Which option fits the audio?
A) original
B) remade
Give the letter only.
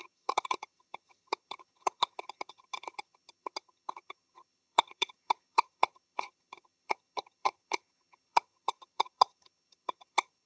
B